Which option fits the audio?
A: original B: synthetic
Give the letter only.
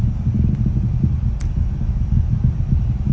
A